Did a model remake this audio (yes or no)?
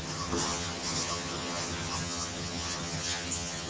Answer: yes